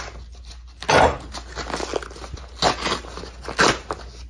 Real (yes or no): yes